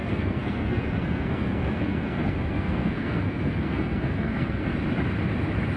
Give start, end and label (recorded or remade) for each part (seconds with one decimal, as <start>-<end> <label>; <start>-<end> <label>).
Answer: 0.0-4.7 remade; 4.7-5.8 recorded